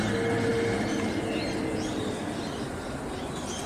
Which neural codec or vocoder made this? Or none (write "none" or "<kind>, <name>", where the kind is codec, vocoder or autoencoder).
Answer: none